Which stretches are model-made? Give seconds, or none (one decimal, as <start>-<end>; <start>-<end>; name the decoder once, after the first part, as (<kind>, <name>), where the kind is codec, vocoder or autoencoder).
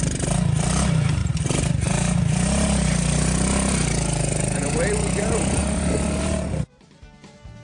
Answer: 0.0-5.6 (vocoder, BigVGAN v2); 6.2-7.6